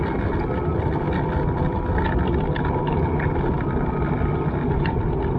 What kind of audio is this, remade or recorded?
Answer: recorded